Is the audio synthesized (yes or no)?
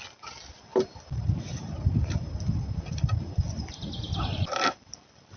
no